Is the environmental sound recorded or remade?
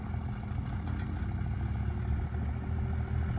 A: recorded